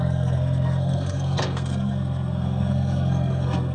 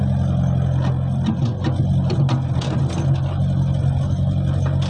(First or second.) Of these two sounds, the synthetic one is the first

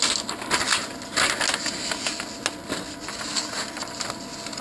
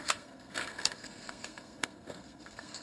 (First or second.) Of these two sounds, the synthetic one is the second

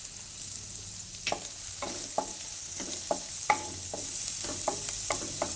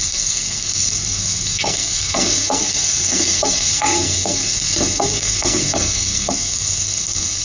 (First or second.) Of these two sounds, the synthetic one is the second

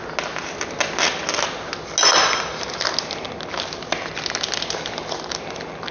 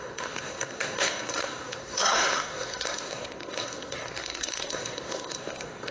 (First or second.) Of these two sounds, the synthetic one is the second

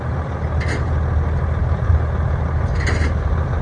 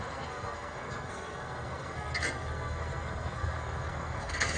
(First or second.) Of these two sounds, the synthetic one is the second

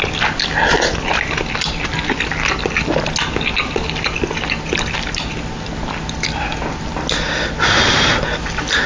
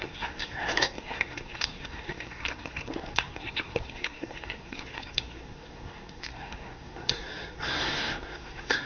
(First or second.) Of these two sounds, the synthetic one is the second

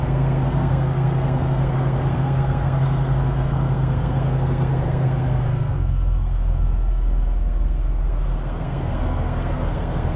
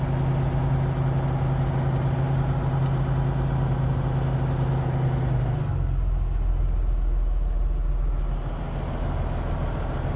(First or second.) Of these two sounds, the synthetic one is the first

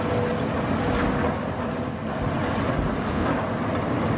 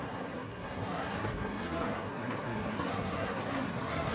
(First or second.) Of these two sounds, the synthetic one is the second